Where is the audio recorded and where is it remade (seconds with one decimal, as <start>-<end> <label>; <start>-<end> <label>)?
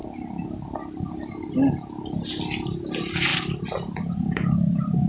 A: 0.0-5.1 recorded